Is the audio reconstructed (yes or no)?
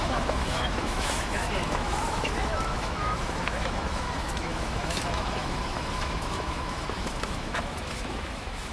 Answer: yes